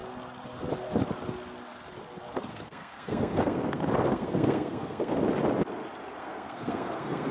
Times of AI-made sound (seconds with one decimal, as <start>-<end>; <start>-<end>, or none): 2.5-5.2; 6.2-7.3